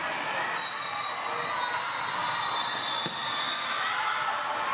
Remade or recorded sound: recorded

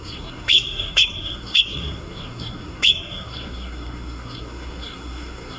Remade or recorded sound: remade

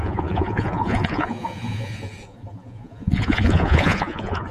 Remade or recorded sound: remade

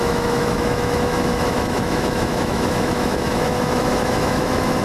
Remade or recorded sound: remade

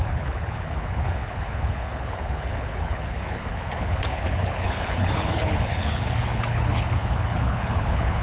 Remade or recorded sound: remade